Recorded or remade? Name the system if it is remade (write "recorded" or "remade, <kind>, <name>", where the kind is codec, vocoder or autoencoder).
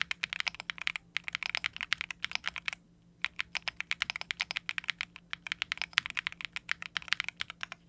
recorded